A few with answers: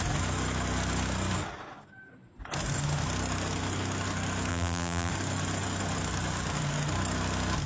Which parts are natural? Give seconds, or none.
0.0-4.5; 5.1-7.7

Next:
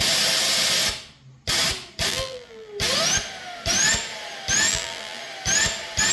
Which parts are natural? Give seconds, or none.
0.0-2.1; 2.7-4.7; 5.2-6.1

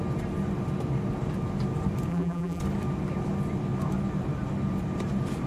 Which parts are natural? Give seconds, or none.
0.0-2.1; 2.6-5.5